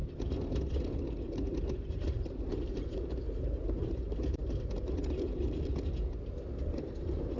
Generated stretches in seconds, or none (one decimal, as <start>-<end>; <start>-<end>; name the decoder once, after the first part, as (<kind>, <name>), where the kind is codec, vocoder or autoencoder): 1.9-4.4 (vocoder, BigVGAN v2)